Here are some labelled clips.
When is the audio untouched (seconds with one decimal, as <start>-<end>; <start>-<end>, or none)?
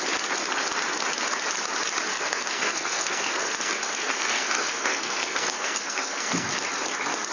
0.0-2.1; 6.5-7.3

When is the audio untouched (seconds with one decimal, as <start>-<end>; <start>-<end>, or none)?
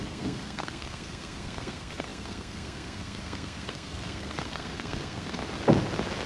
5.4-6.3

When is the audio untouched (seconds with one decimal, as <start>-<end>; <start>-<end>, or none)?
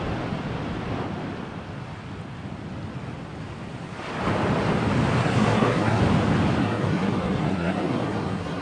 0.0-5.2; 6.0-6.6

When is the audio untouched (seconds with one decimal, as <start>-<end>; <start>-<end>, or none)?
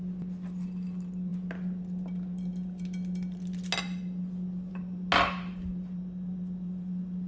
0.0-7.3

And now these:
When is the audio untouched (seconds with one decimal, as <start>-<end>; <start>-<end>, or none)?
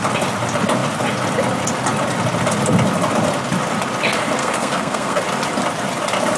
0.0-4.4; 5.2-6.4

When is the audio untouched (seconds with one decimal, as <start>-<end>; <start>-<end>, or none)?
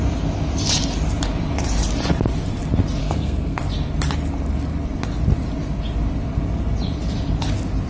0.0-3.0; 3.6-7.9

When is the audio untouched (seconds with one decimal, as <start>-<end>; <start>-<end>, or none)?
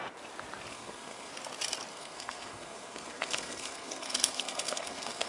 0.0-0.7; 1.3-1.9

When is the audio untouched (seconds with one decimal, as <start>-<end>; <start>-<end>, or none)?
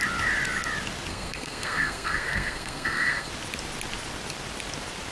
0.0-1.1; 3.3-5.1